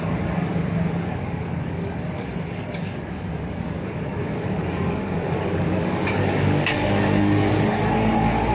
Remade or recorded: remade